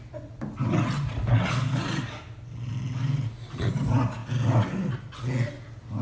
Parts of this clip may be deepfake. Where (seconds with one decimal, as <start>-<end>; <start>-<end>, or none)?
none